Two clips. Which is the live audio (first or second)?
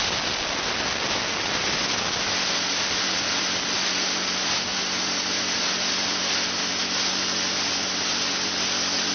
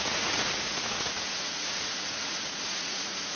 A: first